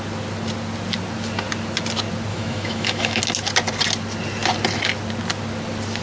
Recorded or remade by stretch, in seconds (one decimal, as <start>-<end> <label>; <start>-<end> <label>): 0.0-2.3 recorded; 2.3-3.2 remade; 3.2-6.0 recorded